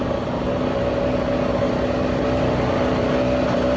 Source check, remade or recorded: recorded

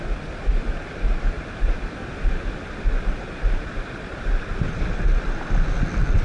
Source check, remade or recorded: recorded